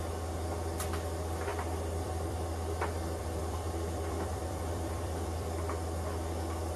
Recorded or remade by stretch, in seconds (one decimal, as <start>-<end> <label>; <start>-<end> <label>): 0.0-1.5 recorded; 1.5-5.6 remade; 5.6-6.8 recorded